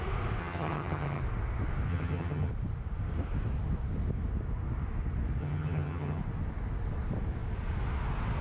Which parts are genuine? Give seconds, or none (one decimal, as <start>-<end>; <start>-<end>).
0.0-0.4; 1.2-1.9; 2.5-5.4; 6.2-8.4